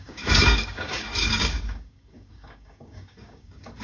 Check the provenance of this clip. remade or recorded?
remade